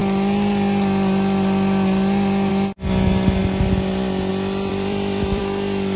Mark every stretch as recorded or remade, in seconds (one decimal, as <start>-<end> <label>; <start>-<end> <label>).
0.0-4.7 recorded; 4.7-5.4 remade; 5.4-6.0 recorded